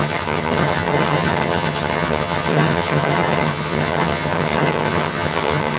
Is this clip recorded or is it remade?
remade